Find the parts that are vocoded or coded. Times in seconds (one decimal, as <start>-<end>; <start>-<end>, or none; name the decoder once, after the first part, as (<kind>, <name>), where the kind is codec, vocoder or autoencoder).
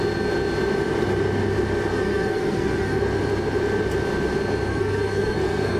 1.9-3.0 (codec, SNAC); 4.7-5.8